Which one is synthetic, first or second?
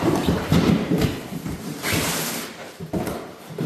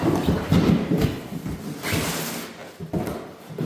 first